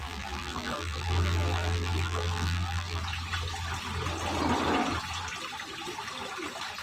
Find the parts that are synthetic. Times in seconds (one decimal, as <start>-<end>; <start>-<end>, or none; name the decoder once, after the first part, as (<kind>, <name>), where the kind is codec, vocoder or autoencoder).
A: 0.0-3.0 (vocoder, BigVGAN v2)